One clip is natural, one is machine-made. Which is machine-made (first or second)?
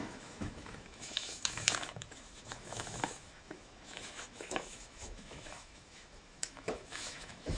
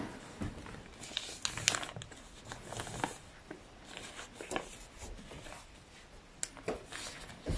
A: first